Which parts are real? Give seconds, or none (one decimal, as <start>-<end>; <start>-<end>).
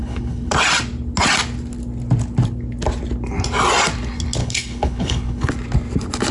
0.5-4.4; 5.5-6.3